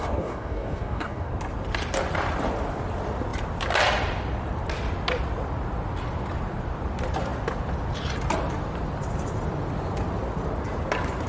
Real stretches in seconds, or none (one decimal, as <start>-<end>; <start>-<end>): 1.3-11.3